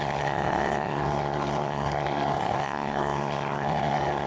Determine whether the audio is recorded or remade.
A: remade